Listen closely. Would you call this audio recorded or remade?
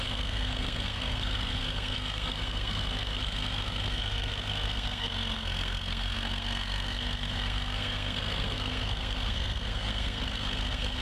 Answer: remade